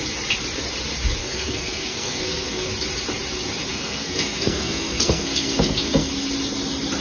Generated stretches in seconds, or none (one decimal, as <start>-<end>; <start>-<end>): 1.2-2.7; 3.7-6.1